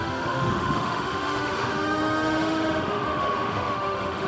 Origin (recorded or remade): remade